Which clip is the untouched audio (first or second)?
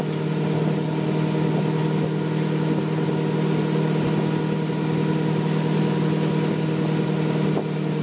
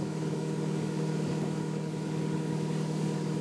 first